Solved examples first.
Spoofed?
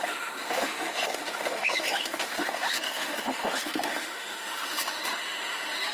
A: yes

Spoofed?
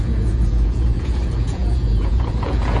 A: yes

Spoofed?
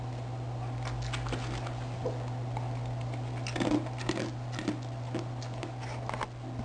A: no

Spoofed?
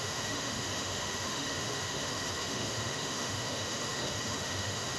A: yes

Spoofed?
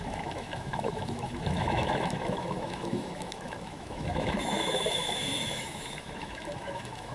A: yes